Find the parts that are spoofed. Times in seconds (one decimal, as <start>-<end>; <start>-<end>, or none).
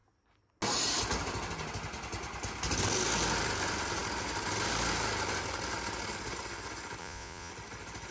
7.0-7.5